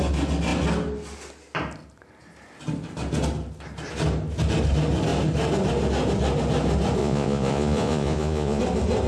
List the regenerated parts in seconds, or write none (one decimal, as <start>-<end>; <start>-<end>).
7.0-8.6